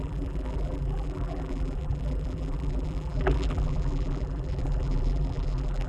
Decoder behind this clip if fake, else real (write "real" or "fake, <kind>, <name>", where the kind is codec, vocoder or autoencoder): fake, vocoder, BigVGAN v2